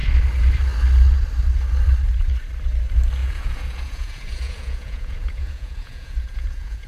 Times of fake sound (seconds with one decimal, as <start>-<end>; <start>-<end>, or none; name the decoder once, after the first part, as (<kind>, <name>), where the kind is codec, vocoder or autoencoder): 3.2-6.9 (vocoder, Vocos)